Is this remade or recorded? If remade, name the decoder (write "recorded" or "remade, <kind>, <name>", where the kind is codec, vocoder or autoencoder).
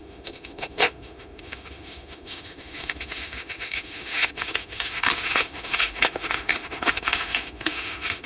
remade, autoencoder, DAC-VAE